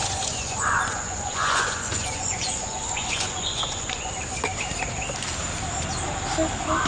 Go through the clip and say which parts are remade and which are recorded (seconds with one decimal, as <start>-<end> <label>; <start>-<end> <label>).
0.0-4.1 remade; 4.1-6.9 recorded